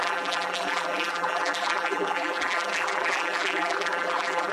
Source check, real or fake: fake